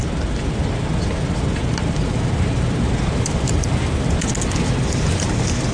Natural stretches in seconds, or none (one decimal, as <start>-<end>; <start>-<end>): 0.0-1.6; 4.2-5.7